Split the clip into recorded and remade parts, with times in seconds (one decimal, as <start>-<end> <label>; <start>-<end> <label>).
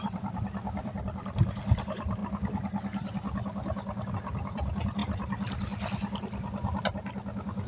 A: 0.0-2.2 remade; 2.2-4.1 recorded; 4.1-5.0 remade; 5.0-7.7 recorded